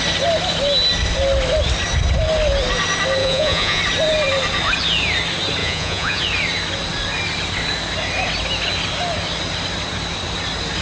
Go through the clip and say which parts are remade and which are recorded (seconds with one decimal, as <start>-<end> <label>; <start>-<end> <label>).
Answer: 0.0-3.2 recorded; 3.2-3.8 remade; 3.8-5.6 recorded; 5.6-6.2 remade; 6.2-10.8 recorded